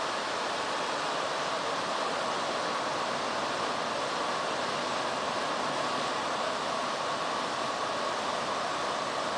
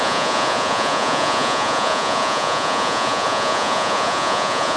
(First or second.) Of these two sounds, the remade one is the second